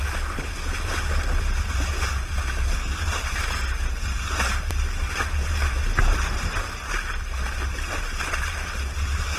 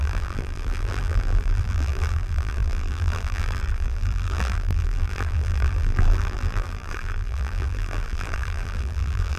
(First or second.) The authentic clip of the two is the first